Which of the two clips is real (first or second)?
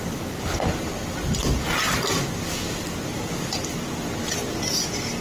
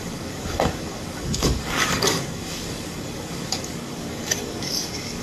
first